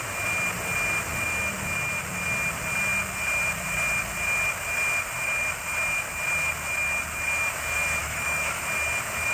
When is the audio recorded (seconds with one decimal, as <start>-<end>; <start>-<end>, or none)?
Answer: 0.0-8.0; 8.6-9.3